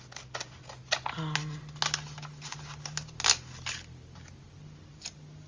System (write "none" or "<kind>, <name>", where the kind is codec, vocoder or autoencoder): none